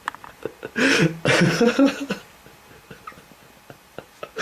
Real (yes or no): yes